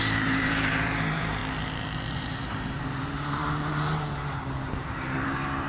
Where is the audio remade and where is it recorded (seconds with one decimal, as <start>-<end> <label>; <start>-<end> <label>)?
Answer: 0.0-1.4 remade; 1.4-2.1 recorded; 2.1-5.7 remade